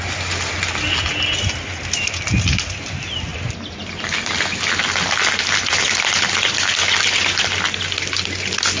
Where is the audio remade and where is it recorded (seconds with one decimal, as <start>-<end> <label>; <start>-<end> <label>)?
0.0-8.8 recorded

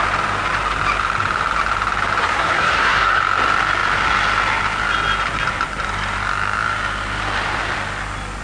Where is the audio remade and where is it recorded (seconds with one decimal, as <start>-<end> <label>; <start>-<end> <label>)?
0.0-2.2 recorded; 2.2-3.2 remade; 3.2-8.4 recorded

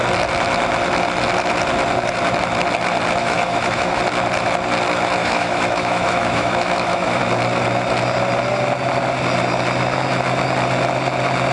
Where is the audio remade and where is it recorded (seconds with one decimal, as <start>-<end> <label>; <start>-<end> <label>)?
0.0-3.2 recorded; 3.2-4.0 remade; 4.0-5.2 recorded; 5.2-7.2 remade; 7.2-11.5 recorded

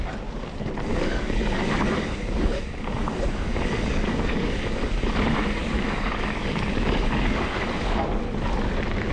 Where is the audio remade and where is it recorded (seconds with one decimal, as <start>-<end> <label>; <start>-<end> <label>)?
0.0-0.9 recorded; 0.9-5.0 remade; 5.0-5.6 recorded; 5.6-8.1 remade; 8.1-9.1 recorded

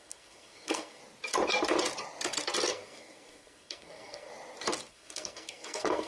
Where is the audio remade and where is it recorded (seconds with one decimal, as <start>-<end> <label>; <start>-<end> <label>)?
0.0-1.0 remade; 1.0-2.7 recorded; 2.7-4.3 remade; 4.3-4.9 recorded; 4.9-6.1 remade

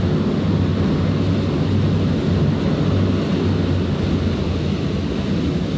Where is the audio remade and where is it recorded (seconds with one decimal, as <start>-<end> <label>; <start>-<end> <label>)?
0.0-5.8 recorded

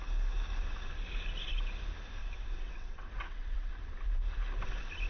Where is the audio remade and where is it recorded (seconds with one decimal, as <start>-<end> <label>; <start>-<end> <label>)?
0.0-2.2 recorded; 2.2-3.7 remade; 3.7-5.1 recorded